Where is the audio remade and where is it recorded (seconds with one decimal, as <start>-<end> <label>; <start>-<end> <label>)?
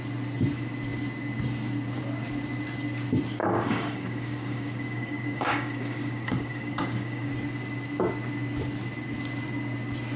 0.0-3.4 recorded; 3.4-7.3 remade; 7.3-10.2 recorded